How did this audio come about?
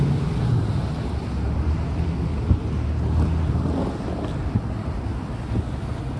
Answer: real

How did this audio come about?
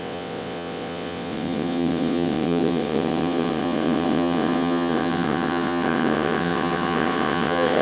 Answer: fake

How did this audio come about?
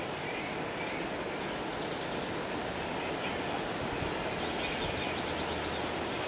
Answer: real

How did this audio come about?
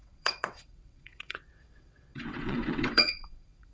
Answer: fake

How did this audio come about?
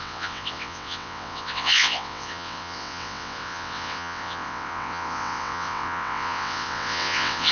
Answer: fake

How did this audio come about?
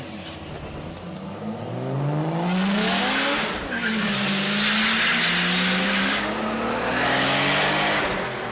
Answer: real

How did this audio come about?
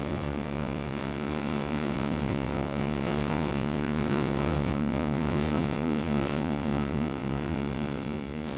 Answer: fake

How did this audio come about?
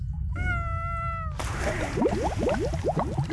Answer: real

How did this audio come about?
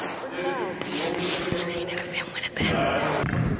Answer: real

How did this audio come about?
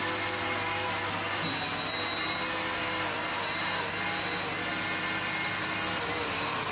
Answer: real